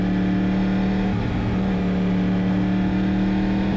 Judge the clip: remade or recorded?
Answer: recorded